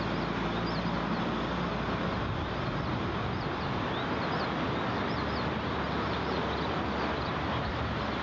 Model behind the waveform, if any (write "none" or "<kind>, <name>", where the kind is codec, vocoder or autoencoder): none